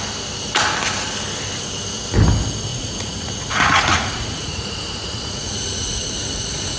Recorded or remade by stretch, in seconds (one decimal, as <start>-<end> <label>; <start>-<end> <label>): 0.0-2.7 recorded; 2.7-6.8 remade